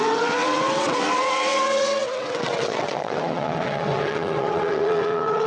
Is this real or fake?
fake